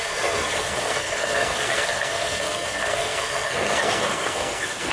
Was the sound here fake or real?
fake